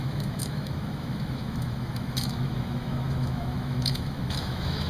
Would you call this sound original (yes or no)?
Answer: no